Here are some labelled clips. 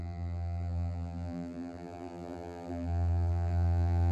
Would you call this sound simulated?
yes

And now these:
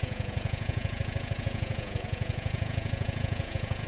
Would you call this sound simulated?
yes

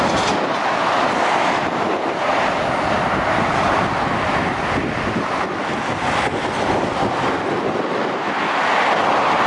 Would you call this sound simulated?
no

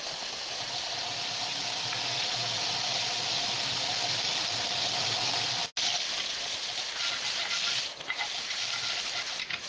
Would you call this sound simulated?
no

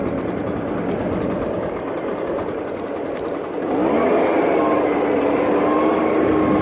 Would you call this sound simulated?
no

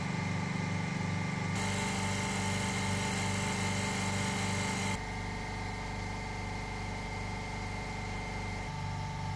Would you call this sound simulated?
no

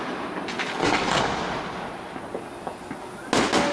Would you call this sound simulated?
no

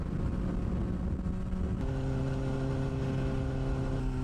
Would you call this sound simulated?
no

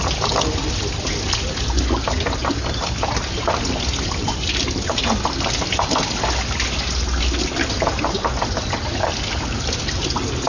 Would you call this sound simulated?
no